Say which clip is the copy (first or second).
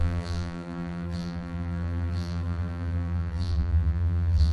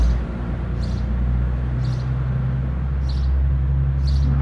first